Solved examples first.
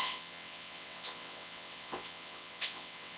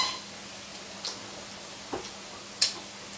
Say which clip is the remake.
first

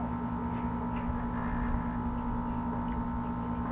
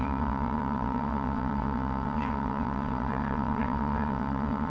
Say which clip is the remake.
second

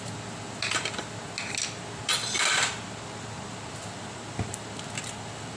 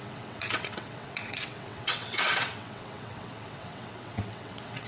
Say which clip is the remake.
second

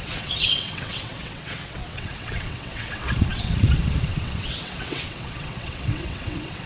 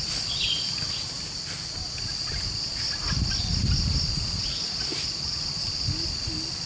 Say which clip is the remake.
first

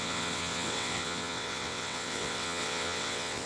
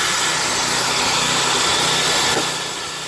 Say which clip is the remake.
first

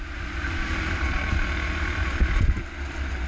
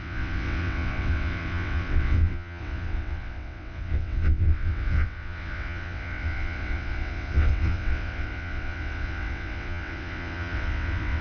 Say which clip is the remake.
second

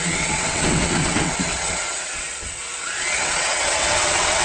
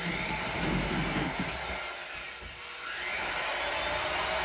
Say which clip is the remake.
first